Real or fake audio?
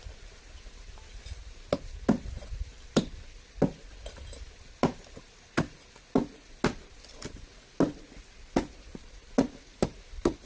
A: real